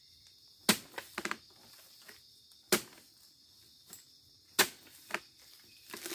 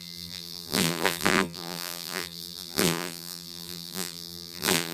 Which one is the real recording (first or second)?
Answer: first